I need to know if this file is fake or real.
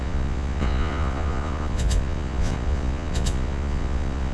fake